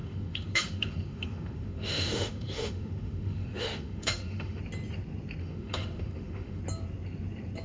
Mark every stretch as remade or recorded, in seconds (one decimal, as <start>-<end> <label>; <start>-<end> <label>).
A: 0.0-4.6 remade; 4.6-5.4 recorded; 5.4-6.6 remade; 6.6-7.6 recorded